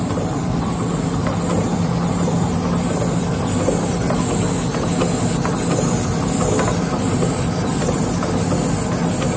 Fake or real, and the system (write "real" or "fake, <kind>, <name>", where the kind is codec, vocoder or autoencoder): real